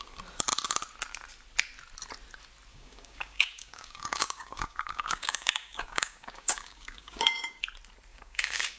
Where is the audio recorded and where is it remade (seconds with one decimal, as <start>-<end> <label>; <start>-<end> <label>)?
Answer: 0.0-2.7 recorded; 2.7-7.6 remade; 7.6-8.1 recorded; 8.1-8.8 remade